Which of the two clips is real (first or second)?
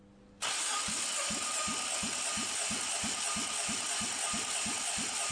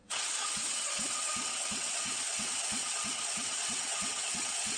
first